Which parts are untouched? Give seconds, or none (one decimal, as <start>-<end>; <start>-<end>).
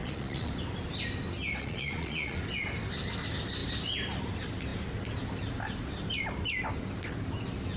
0.5-1.6; 2.4-7.8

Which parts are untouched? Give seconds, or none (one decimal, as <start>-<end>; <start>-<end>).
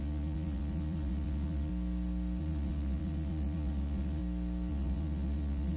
1.7-2.4; 4.2-4.7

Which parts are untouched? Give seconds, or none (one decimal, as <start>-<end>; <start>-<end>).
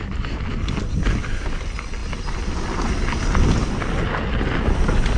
0.0-5.2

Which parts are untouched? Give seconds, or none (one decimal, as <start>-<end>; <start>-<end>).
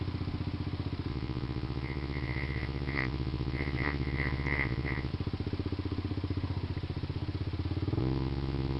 0.0-1.1; 5.1-8.0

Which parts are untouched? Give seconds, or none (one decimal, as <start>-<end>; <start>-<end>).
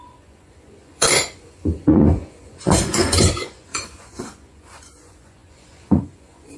none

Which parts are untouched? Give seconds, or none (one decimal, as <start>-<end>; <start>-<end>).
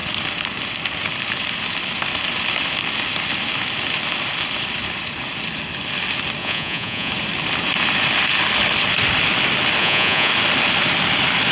0.0-6.4; 7.1-9.8; 10.3-11.5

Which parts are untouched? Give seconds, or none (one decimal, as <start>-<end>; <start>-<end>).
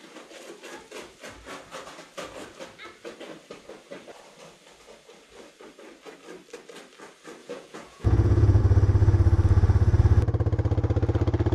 0.0-7.4; 8.6-11.5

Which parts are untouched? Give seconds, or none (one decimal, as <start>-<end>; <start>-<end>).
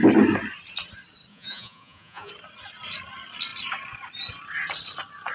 0.0-1.3; 2.3-5.3